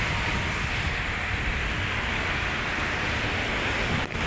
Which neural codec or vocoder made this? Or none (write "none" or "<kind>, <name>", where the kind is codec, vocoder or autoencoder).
none